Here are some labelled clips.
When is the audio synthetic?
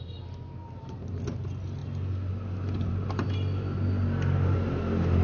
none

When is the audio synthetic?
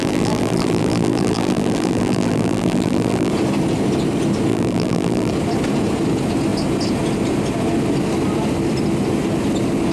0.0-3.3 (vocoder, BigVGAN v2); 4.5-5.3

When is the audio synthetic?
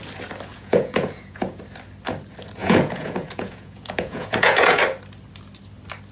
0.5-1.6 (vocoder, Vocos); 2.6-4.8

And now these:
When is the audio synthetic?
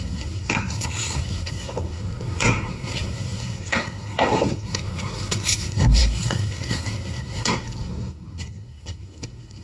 0.0-9.6 (codec, SNAC)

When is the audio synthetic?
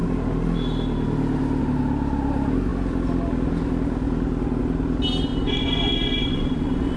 5.3-7.0 (vocoder, Vocos)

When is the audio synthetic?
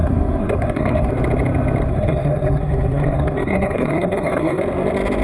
0.0-1.1 (codec, SNAC); 1.9-4.6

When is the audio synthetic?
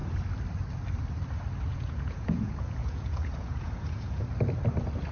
1.7-4.2 (vocoder, Vocos)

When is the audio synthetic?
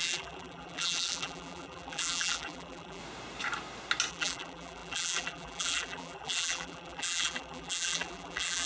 0.0-3.0 (vocoder, BigVGAN v2); 4.1-8.7